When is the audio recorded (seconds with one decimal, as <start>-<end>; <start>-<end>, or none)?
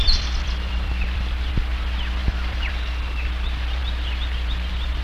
1.5-2.2; 2.7-5.0